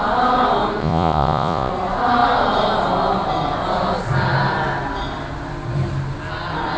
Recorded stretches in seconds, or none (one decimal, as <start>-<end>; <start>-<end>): 0.0-0.8; 1.7-6.8